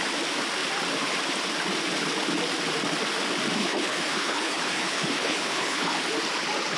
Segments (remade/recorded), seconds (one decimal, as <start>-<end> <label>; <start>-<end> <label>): 0.0-3.6 recorded; 3.6-6.0 remade; 6.0-6.8 recorded